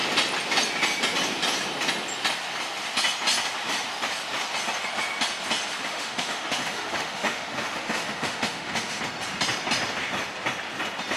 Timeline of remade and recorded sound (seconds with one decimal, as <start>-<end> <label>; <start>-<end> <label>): 0.0-5.8 recorded; 5.8-9.0 remade; 9.0-11.2 recorded